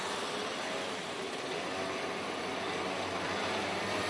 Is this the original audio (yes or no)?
yes